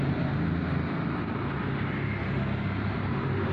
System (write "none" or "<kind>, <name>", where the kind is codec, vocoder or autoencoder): none